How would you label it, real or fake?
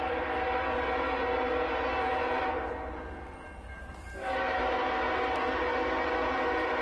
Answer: real